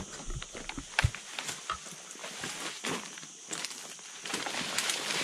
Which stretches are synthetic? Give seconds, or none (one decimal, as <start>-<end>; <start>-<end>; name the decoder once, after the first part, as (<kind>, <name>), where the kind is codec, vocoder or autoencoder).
none